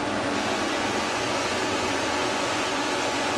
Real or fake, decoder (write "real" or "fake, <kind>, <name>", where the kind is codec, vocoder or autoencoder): fake, vocoder, Vocos